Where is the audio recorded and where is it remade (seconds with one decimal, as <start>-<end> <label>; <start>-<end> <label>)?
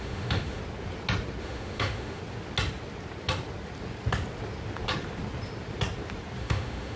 0.0-0.6 remade; 0.6-1.4 recorded; 1.4-2.2 remade; 2.2-6.4 recorded; 6.4-7.0 remade